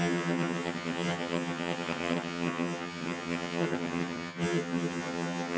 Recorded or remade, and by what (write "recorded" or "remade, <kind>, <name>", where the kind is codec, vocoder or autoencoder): remade, vocoder, HiFi-GAN